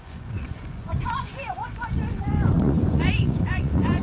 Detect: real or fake fake